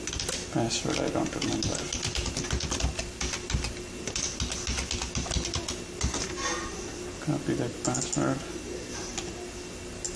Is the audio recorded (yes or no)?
yes